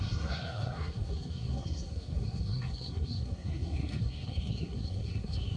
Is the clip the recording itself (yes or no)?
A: no